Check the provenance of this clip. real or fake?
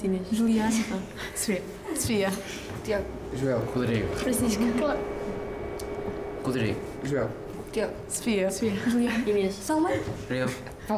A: real